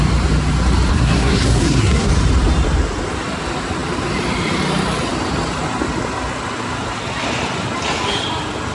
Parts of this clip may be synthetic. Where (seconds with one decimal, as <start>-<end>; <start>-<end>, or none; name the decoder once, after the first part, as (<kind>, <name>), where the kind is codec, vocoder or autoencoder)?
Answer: 0.9-2.1 (codec, SNAC)